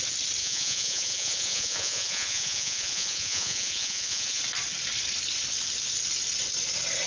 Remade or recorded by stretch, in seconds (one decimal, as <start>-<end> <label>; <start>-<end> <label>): 0.0-0.4 recorded; 0.4-4.4 remade; 4.4-7.1 recorded